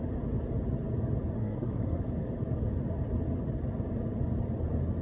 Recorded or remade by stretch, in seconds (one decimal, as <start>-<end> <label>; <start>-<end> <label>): 0.0-1.4 recorded; 1.4-2.0 remade; 2.0-5.0 recorded